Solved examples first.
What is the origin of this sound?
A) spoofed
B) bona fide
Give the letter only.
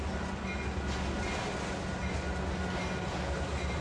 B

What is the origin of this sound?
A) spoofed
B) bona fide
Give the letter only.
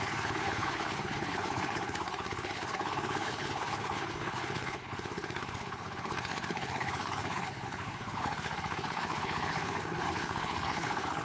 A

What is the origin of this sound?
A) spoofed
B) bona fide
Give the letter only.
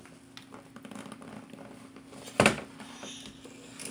B